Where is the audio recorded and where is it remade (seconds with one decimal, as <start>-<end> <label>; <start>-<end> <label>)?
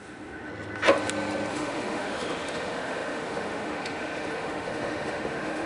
0.0-0.5 remade; 0.5-1.5 recorded; 1.5-5.7 remade